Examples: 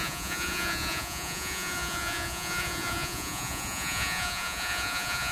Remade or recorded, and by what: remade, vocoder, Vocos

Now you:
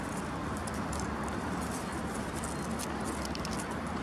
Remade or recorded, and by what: recorded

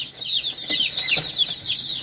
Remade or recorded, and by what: recorded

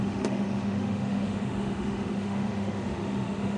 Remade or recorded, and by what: remade, autoencoder, DAC-VAE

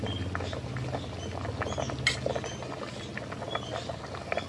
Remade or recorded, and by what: recorded